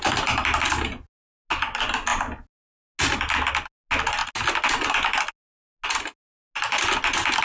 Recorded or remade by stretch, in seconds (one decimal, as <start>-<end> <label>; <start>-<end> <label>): 0.0-7.4 recorded